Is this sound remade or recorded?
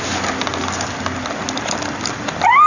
recorded